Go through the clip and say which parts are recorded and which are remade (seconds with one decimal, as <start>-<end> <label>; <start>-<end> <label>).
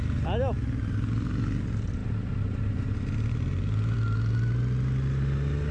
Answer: 0.0-5.7 recorded